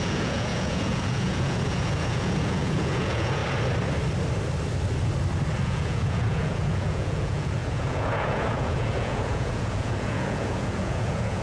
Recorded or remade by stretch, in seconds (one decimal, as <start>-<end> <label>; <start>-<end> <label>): 0.0-3.4 remade; 3.4-5.6 recorded; 5.6-11.4 remade

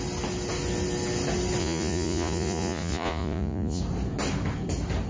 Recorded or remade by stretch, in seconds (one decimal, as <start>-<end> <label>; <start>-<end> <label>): 0.0-1.6 recorded; 1.6-3.8 remade; 3.8-5.1 recorded

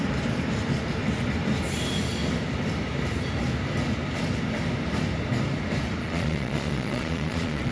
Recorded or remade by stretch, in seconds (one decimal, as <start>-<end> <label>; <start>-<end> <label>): 0.0-6.0 recorded; 6.0-7.7 remade

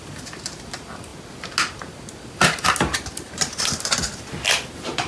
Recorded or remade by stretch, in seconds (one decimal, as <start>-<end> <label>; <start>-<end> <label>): 0.0-5.1 recorded

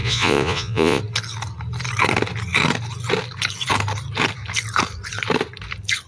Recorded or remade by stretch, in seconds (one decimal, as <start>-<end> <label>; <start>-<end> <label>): 0.0-1.0 remade; 1.0-6.1 recorded

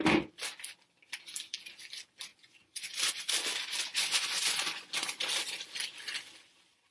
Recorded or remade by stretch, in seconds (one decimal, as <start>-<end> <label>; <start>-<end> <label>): 0.0-2.3 recorded; 2.3-3.3 remade; 3.3-3.9 recorded; 3.9-5.2 remade; 5.2-6.9 recorded